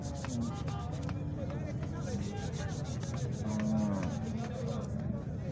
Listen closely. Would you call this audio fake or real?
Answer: real